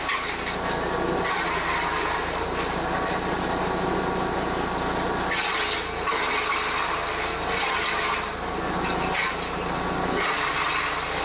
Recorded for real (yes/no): yes